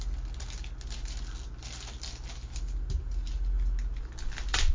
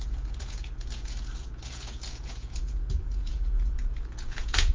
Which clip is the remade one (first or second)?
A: second